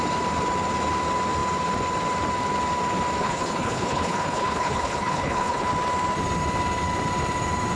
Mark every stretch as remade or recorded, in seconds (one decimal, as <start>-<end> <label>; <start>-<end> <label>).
0.0-3.2 recorded; 3.2-5.7 remade; 5.7-7.8 recorded

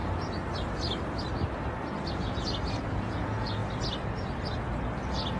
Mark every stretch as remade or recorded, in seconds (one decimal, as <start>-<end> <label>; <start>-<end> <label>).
0.0-2.1 recorded; 2.1-3.6 remade; 3.6-5.4 recorded